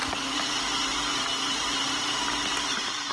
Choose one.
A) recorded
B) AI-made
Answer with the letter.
A